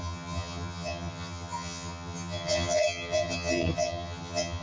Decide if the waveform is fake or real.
fake